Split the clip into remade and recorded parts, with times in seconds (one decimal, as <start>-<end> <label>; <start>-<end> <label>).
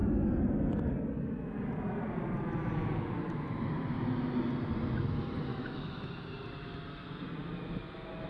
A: 0.0-5.5 recorded; 5.5-6.1 remade; 6.1-8.3 recorded